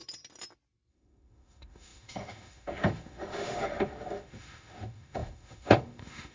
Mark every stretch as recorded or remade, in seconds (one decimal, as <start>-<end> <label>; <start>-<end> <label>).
0.0-0.9 recorded; 0.9-6.3 remade